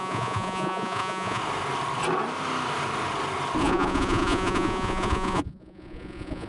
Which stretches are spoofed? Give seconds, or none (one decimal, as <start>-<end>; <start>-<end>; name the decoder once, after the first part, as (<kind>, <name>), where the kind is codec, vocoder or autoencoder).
0.0-1.4 (vocoder, Vocos); 3.6-6.5